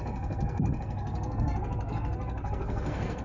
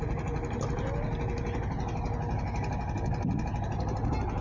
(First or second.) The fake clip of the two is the first